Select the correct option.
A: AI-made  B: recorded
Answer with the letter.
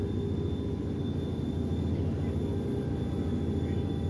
B